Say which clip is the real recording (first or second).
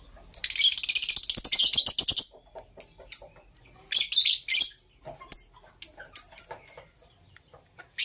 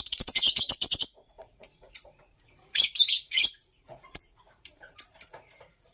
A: first